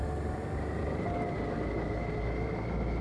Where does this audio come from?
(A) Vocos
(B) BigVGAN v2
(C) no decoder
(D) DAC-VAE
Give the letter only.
C